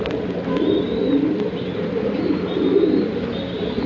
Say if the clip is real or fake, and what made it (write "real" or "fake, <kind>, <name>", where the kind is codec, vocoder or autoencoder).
real